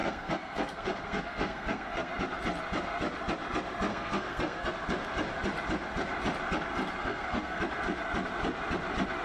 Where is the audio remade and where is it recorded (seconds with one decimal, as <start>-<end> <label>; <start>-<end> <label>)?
0.0-2.1 remade; 2.1-3.9 recorded; 3.9-4.7 remade; 4.7-7.0 recorded; 7.0-7.6 remade; 7.6-9.2 recorded